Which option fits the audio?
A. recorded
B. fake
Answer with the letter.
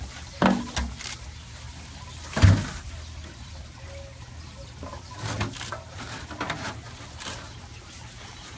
A